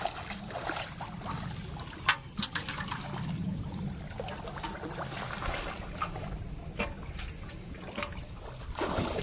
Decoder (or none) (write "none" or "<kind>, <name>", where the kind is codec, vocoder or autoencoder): none